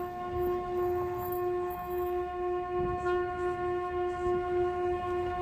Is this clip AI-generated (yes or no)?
yes